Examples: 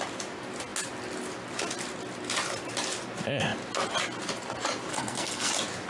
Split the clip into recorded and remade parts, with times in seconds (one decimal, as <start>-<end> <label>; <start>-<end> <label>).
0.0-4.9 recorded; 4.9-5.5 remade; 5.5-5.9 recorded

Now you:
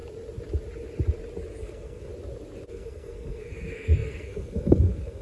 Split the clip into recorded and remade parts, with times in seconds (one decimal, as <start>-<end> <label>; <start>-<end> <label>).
0.0-1.6 recorded; 1.6-2.1 remade; 2.1-2.7 recorded; 2.7-5.2 remade

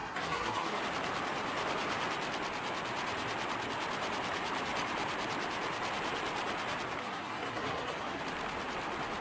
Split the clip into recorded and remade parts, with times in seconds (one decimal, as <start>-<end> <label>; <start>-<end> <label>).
0.0-0.8 remade; 0.8-7.0 recorded; 7.0-8.2 remade; 8.2-9.2 recorded